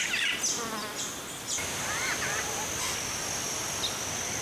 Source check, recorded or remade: recorded